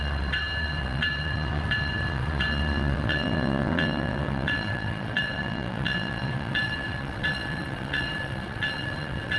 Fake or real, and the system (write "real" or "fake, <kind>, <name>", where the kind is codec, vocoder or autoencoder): fake, vocoder, WaveNeXt